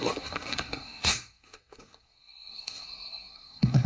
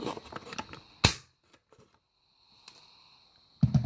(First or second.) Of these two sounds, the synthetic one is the first